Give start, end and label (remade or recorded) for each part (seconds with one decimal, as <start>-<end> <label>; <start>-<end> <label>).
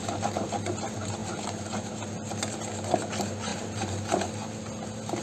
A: 0.0-1.2 recorded; 1.2-1.9 remade; 1.9-3.5 recorded; 3.5-4.3 remade; 4.3-5.2 recorded